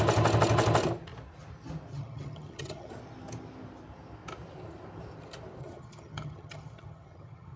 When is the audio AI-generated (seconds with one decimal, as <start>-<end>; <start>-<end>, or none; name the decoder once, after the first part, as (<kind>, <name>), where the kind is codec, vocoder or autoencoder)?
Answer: 1.9-2.9 (vocoder, HiFi-GAN); 5.6-7.6